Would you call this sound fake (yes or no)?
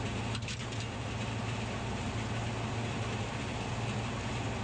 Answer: no